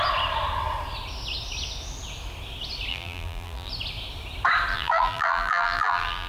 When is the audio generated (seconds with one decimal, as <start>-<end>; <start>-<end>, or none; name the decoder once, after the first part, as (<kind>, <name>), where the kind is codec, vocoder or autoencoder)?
2.9-3.7 (vocoder, BigVGAN v2); 4.7-6.3